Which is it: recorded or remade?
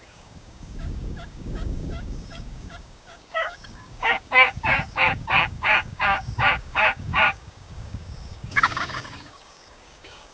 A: remade